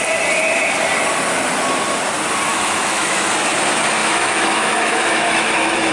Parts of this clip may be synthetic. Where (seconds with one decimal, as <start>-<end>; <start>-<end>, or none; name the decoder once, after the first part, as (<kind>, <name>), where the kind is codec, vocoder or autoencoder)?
2.5-3.3 (autoencoder, DAC-VAE); 4.0-5.9